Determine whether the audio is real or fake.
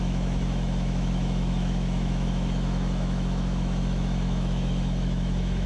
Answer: fake